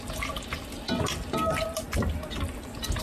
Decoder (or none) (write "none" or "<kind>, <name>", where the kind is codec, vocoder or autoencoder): vocoder, BigVGAN v2